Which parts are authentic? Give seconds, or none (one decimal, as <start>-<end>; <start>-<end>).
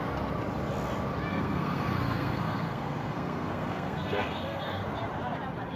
0.0-1.3; 4.8-5.8